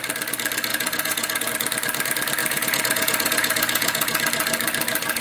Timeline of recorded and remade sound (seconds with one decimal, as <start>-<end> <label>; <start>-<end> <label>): 0.0-0.7 recorded; 0.7-1.5 remade; 1.5-2.4 recorded; 2.4-4.2 remade; 4.2-5.2 recorded